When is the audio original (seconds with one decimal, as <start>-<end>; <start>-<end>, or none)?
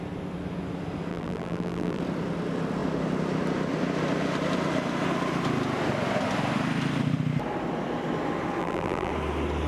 0.0-1.1; 2.0-8.6; 9.1-9.7